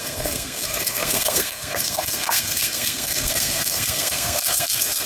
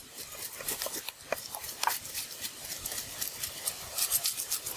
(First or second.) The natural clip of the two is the second